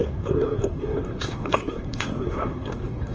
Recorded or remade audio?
remade